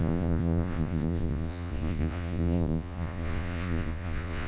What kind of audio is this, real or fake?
fake